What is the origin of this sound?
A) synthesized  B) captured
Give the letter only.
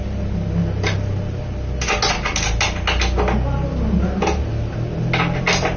B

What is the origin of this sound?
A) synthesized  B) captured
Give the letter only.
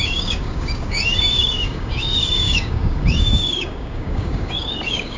A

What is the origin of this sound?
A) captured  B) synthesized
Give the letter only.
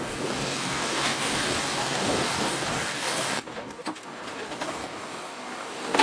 B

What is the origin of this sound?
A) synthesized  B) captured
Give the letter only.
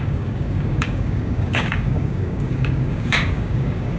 A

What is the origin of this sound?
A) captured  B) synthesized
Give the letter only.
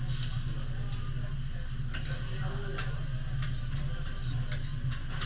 A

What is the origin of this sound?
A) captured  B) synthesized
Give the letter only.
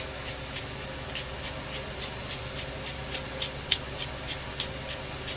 A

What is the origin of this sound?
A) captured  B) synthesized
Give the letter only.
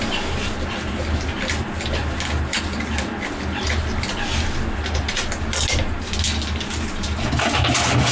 A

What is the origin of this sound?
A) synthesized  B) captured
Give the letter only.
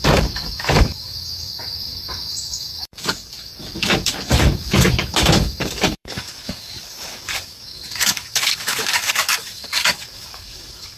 A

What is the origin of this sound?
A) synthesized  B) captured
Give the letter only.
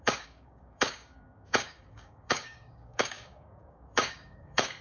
A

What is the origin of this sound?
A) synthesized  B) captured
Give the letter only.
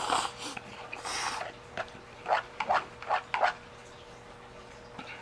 B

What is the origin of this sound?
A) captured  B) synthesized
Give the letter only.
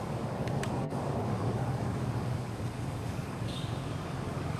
B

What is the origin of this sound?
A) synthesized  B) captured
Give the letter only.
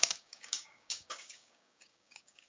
A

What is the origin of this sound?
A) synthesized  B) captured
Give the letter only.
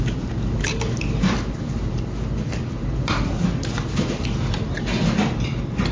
B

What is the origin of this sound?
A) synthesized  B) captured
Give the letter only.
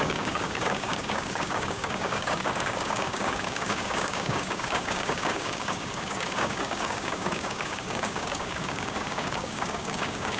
A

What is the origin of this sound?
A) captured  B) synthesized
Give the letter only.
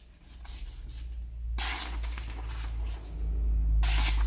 A